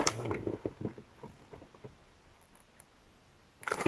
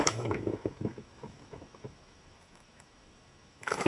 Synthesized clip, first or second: second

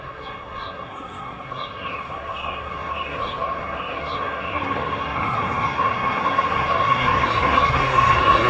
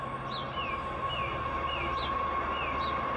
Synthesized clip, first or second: first